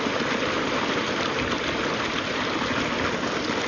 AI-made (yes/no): no